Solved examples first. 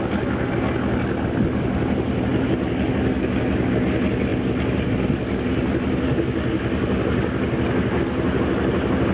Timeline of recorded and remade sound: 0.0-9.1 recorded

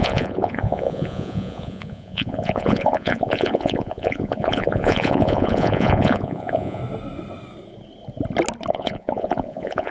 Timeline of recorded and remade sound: 0.0-6.8 remade; 6.8-8.7 recorded; 8.7-9.9 remade

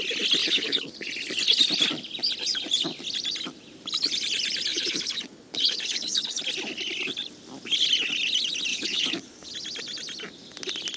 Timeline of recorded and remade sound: 0.0-0.4 recorded; 0.4-0.9 remade; 0.9-4.7 recorded; 4.7-6.4 remade; 6.4-8.7 recorded; 8.7-9.5 remade; 9.5-11.0 recorded